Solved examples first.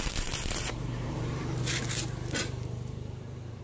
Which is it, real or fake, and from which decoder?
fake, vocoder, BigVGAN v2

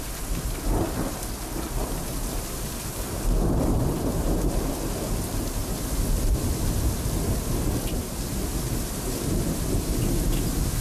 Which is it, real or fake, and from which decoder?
fake, vocoder, BigVGAN v2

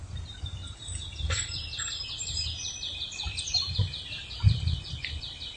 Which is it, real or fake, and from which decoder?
fake, vocoder, BigVGAN v2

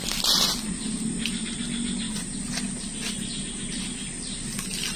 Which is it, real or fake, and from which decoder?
real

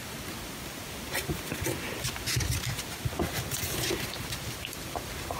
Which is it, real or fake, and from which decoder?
real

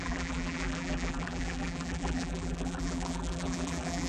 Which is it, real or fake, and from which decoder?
fake, vocoder, BigVGAN v2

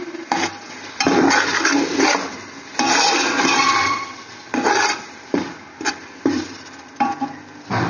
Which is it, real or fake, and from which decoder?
fake, vocoder, BigVGAN v2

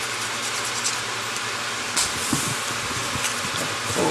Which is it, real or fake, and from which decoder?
real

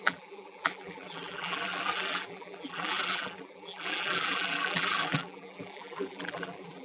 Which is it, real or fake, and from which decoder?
fake, vocoder, BigVGAN v2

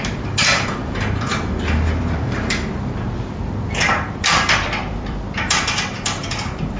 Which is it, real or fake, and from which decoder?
fake, vocoder, BigVGAN v2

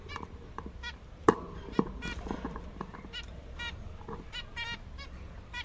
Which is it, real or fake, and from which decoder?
fake, vocoder, BigVGAN v2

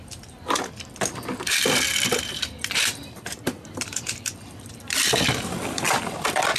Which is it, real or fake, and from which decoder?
fake, vocoder, BigVGAN v2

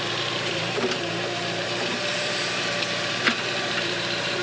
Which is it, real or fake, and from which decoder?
fake, vocoder, BigVGAN v2